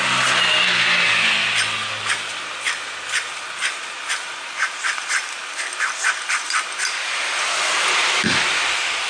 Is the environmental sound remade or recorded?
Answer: recorded